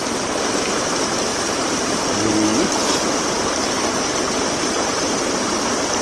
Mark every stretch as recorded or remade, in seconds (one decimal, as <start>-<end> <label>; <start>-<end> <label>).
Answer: 0.0-1.3 recorded; 1.3-2.0 remade; 2.0-6.0 recorded